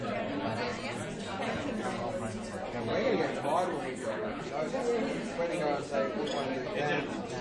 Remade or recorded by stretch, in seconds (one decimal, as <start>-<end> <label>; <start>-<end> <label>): 0.0-4.0 recorded; 4.0-4.5 remade; 4.5-7.4 recorded

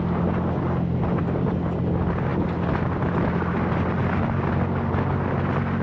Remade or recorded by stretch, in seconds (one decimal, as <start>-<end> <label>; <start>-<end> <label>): 0.0-5.8 recorded

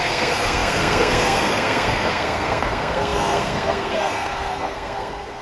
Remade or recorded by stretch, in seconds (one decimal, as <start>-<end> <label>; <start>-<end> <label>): 0.0-5.4 remade

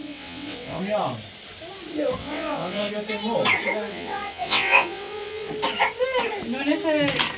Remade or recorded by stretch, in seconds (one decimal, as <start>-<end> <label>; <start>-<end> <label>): 0.0-0.8 remade; 0.8-2.2 recorded; 2.2-2.9 remade; 2.9-3.9 recorded; 3.9-5.5 remade; 5.5-7.4 recorded